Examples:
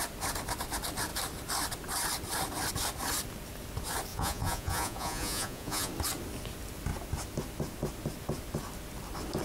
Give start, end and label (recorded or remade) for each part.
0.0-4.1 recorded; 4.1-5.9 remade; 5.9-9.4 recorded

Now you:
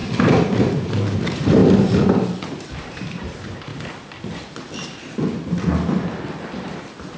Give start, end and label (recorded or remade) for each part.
0.0-0.6 recorded; 0.6-1.6 remade; 1.6-2.3 recorded; 2.3-3.7 remade; 3.7-5.9 recorded; 5.9-7.2 remade